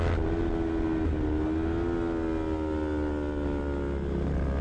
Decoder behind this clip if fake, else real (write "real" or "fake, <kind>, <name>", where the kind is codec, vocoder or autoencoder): real